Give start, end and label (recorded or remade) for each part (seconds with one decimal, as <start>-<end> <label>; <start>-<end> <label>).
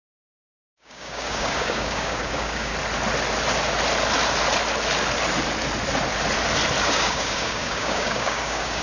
0.0-2.7 remade; 2.7-6.8 recorded; 6.8-8.8 remade